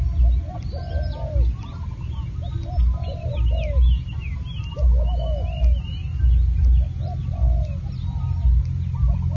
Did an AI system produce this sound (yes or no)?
no